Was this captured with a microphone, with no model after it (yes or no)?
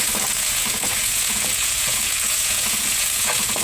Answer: no